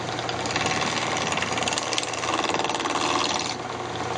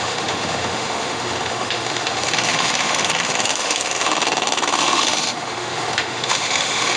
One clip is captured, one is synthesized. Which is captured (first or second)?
first